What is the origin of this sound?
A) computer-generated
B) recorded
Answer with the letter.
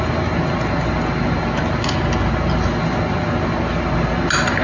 B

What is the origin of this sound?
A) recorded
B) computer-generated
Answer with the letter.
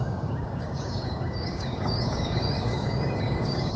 B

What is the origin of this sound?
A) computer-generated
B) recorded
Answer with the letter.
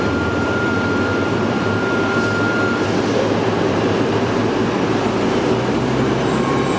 A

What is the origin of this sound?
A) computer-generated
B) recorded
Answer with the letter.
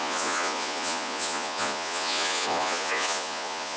A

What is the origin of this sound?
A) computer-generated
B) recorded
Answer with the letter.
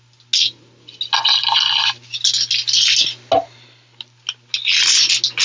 B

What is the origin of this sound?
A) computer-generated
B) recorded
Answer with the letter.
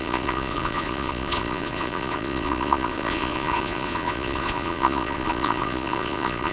A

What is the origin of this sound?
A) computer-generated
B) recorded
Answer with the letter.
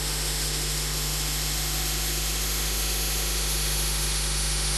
A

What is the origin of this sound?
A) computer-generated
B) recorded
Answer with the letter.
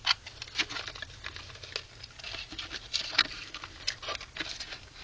B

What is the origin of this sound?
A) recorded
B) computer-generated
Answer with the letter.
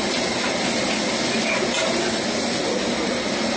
A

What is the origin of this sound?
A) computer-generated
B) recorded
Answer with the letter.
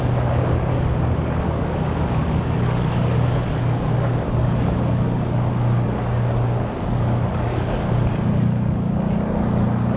A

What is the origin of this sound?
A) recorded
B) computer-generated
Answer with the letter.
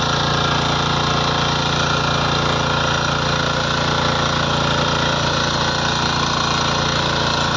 A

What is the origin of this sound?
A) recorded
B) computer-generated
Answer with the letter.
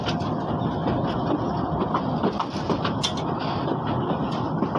A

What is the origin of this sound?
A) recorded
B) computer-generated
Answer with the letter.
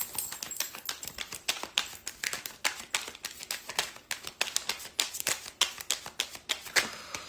A